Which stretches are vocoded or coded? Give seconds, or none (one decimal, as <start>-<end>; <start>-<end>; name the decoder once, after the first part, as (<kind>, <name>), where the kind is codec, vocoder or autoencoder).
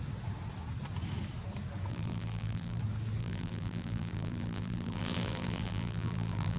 1.9-2.8 (vocoder, BigVGAN v2); 3.2-6.6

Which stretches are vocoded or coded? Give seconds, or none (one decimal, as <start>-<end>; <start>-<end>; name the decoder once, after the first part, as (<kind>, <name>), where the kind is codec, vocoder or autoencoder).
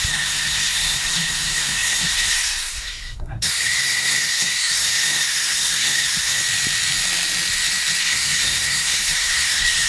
0.0-6.4 (codec, SNAC); 8.0-9.9